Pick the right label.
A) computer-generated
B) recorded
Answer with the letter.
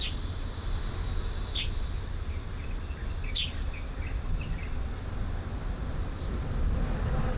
B